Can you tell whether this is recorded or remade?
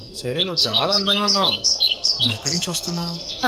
remade